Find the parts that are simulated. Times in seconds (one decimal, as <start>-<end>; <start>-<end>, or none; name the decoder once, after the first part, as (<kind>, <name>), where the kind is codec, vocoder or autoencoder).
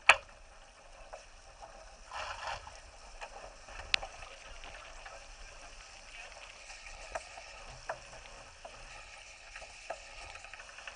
6.6-7.6 (codec, HILCodec); 8.9-10.6